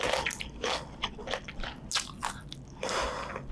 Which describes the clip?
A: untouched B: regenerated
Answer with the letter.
A